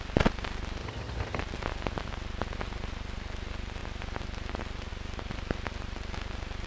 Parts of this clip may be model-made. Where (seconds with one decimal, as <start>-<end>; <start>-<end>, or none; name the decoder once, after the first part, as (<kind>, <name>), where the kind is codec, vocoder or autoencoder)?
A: 0.8-1.4 (vocoder, HiFi-GAN)